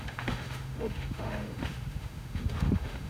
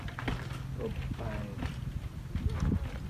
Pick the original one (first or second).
second